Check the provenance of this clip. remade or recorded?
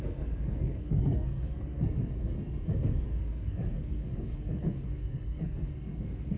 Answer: remade